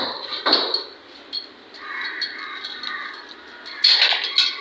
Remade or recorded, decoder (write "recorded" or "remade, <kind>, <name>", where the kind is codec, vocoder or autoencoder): recorded